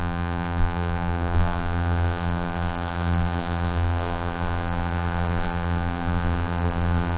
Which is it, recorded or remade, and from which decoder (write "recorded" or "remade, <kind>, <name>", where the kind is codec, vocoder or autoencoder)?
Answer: remade, vocoder, BigVGAN v2